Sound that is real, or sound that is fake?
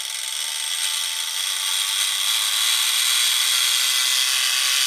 real